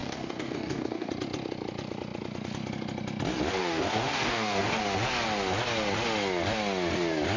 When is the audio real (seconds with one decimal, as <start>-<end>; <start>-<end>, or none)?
1.1-3.6; 4.8-7.4